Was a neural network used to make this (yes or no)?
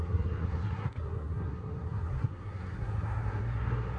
yes